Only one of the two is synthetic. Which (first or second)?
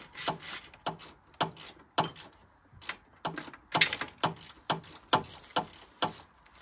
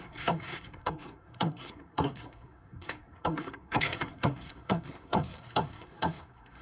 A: second